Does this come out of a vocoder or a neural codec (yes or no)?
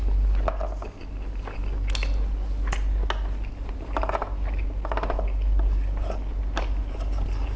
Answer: no